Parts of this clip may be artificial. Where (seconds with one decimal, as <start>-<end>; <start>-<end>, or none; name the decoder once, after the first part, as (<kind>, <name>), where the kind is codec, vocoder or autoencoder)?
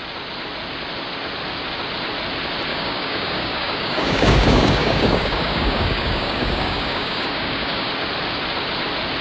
2.7-7.9 (codec, DAC)